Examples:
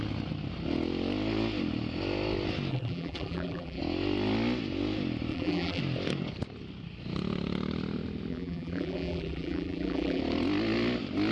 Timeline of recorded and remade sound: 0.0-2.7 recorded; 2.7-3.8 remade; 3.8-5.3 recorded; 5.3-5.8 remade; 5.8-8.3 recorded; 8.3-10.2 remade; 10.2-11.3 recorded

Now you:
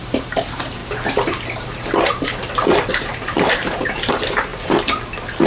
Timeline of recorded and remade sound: 0.0-4.5 remade; 4.5-5.5 recorded

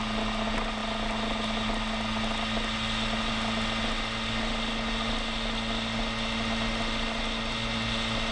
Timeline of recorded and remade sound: 0.0-8.3 recorded

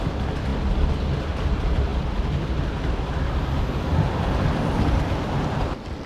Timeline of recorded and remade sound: 0.0-6.1 recorded